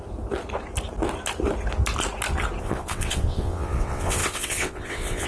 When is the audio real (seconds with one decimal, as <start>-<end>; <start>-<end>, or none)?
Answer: 0.0-2.6